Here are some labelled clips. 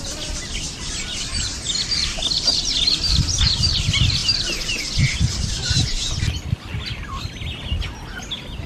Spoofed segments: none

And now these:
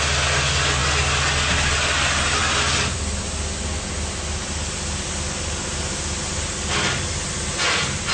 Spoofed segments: none